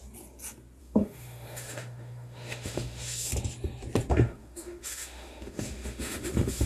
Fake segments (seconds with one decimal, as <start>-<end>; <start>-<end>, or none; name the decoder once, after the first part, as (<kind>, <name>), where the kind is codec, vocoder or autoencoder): 0.8-3.3 (autoencoder, DAC-VAE); 4.1-6.7